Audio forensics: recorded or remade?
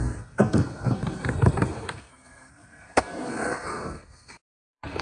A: remade